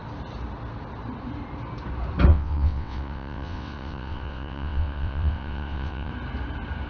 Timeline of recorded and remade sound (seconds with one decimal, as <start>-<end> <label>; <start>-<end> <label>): 0.0-2.3 recorded; 2.3-6.1 remade; 6.1-6.9 recorded